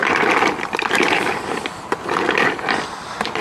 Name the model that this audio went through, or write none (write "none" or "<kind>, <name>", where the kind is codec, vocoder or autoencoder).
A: vocoder, BigVGAN v2